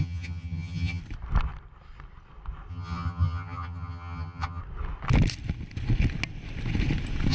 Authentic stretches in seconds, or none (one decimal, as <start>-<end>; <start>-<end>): 1.0-2.7; 4.6-7.3